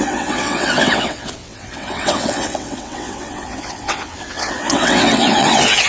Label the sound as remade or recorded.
remade